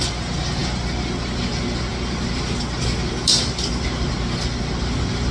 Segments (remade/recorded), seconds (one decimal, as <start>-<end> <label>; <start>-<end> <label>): 0.0-5.3 recorded